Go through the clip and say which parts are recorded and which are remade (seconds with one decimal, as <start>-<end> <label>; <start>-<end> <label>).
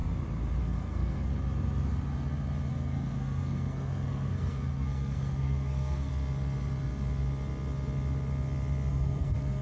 0.0-0.6 recorded; 0.6-1.3 remade; 1.3-2.7 recorded; 2.7-6.1 remade; 6.1-8.9 recorded; 8.9-9.6 remade